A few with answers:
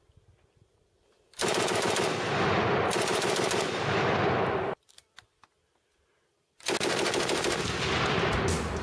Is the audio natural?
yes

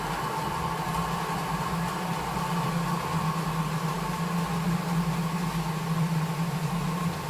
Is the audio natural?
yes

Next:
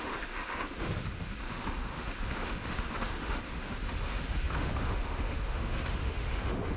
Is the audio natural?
no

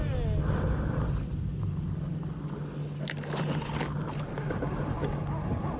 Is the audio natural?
yes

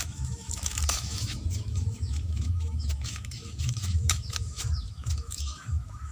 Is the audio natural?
no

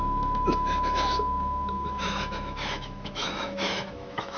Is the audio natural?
no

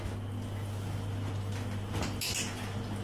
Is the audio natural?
yes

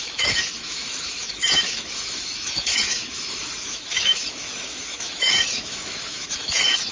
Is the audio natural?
no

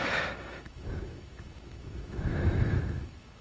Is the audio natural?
no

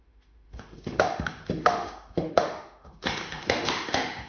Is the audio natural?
no